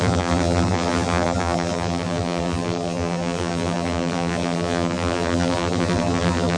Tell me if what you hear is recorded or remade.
remade